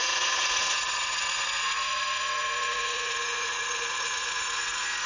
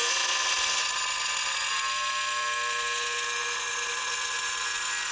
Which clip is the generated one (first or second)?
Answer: first